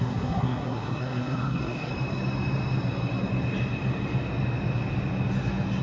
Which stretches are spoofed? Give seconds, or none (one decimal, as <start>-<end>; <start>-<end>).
0.0-1.9